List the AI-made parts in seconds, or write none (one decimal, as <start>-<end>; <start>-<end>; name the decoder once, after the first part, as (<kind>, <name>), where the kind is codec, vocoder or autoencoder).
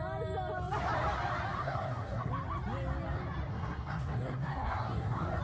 1.6-2.3 (codec, SNAC); 3.5-5.4